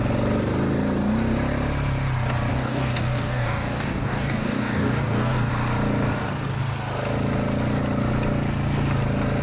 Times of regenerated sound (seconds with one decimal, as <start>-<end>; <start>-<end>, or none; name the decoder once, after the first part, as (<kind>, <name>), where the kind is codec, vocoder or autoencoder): 2.5-5.5 (codec, DAC)